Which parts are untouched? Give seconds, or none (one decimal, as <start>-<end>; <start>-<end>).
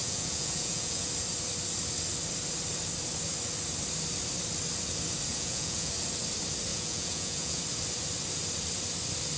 1.1-5.3; 5.9-6.7; 7.6-9.4